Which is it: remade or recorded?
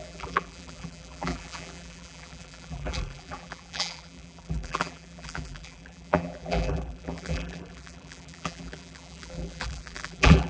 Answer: remade